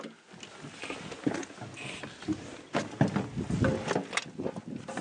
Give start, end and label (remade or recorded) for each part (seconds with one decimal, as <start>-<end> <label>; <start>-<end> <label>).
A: 0.0-5.0 recorded